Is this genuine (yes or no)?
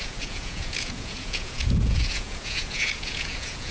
no